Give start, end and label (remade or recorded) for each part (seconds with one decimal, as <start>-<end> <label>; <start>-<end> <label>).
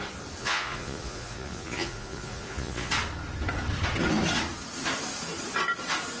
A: 0.0-0.4 recorded; 0.4-2.9 remade; 2.9-6.2 recorded